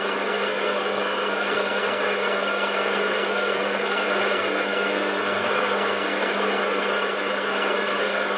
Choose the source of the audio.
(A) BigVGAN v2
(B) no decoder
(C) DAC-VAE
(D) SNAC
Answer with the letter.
D